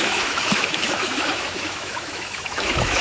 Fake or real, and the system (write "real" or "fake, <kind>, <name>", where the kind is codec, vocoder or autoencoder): fake, autoencoder, DAC-VAE